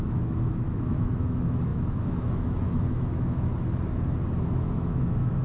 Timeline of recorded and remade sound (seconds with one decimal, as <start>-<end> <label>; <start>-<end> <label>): 0.0-3.5 remade; 3.5-4.4 recorded; 4.4-5.4 remade